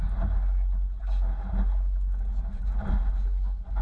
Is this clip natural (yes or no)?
yes